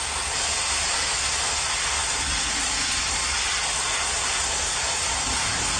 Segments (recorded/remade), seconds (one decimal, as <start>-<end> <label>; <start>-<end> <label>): 0.0-5.8 recorded